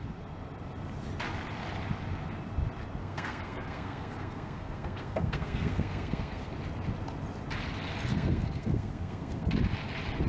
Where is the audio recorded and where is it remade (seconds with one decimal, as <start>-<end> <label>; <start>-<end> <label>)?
0.0-3.0 recorded; 3.0-6.5 remade; 6.5-8.1 recorded; 8.1-9.5 remade; 9.5-10.3 recorded